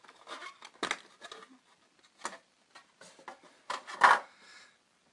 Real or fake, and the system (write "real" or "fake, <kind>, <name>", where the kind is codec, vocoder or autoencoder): real